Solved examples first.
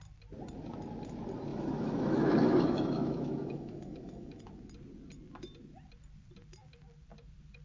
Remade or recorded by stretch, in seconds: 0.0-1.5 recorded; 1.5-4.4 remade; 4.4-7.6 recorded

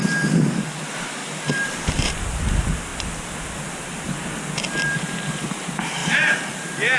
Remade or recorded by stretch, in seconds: 0.0-1.2 recorded; 1.2-2.4 remade; 2.4-6.0 recorded; 6.0-7.0 remade

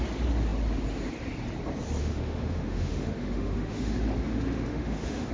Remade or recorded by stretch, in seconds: 0.0-2.0 recorded; 2.0-5.3 remade